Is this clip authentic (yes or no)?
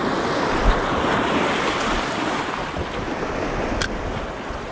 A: yes